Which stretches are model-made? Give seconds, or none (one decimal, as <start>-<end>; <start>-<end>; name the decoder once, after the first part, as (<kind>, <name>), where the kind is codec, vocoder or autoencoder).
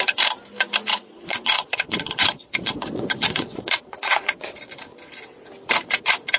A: 0.9-4.7 (vocoder, Vocos)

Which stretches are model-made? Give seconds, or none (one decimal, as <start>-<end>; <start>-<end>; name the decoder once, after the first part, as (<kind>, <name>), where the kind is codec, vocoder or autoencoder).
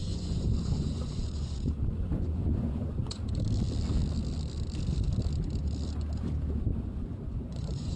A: 0.0-3.2 (vocoder, Vocos); 6.8-8.0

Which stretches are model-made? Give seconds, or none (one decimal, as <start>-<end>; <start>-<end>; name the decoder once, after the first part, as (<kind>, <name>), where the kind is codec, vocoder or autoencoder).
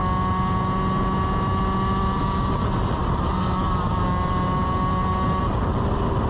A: none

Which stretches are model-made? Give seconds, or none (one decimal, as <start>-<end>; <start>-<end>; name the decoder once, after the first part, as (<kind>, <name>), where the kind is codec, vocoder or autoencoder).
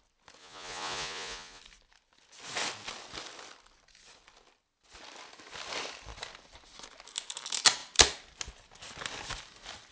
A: 0.4-1.6 (vocoder, Vocos)